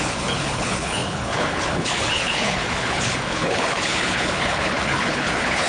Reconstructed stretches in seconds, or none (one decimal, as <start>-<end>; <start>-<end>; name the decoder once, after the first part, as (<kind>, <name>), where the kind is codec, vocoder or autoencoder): 0.0-5.7 (codec, HILCodec)